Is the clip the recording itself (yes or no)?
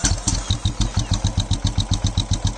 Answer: yes